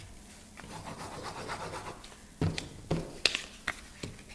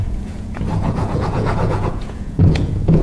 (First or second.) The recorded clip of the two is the first